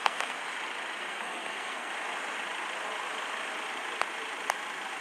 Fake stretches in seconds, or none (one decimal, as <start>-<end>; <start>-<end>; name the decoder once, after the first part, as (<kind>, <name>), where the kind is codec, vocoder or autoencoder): 0.0-0.4 (codec, SNAC); 1.0-1.9